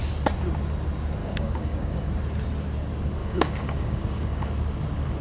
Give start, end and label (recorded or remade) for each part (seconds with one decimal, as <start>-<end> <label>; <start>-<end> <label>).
0.0-1.2 recorded; 1.2-2.1 remade; 2.1-3.2 recorded; 3.2-4.5 remade; 4.5-5.2 recorded